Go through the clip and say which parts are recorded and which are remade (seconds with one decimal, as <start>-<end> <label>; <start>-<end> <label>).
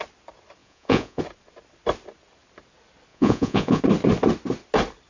0.0-0.6 recorded; 0.6-1.2 remade; 1.2-3.1 recorded; 3.1-3.8 remade; 3.8-5.1 recorded